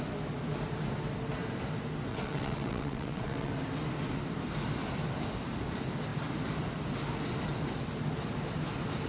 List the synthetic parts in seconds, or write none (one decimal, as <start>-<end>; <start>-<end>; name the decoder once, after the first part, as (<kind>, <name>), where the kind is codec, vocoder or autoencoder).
2.1-3.5 (vocoder, WaveNeXt)